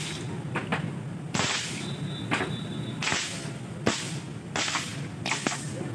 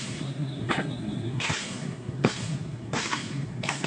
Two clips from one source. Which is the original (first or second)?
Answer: first